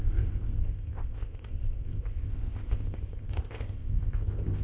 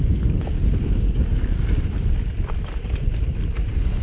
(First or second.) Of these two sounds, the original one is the second